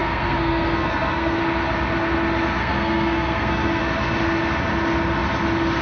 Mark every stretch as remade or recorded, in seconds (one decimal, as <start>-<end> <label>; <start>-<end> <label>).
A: 0.0-1.4 remade; 1.4-2.6 recorded; 2.6-3.8 remade; 3.8-5.8 recorded